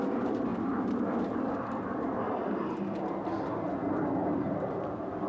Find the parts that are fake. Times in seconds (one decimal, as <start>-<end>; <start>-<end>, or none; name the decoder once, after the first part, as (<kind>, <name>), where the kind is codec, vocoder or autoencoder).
none